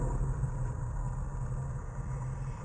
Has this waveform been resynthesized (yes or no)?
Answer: no